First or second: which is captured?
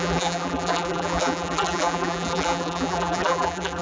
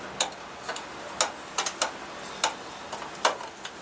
second